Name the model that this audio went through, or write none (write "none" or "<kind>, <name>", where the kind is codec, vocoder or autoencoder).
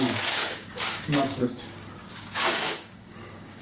codec, DAC